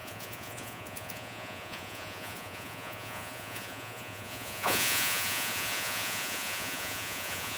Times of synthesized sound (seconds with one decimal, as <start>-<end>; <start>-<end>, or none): 0.0-7.6